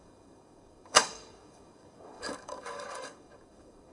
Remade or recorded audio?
remade